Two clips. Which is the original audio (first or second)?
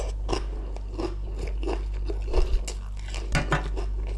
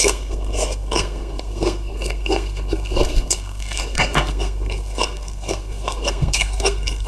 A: first